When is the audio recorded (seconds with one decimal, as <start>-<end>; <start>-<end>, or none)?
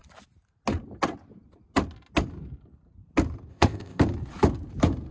0.0-3.5; 4.0-5.1